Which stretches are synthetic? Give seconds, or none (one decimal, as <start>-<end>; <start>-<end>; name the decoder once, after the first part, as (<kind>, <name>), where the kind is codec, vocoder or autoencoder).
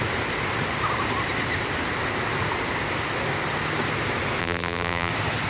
4.4-5.1 (vocoder, BigVGAN v2)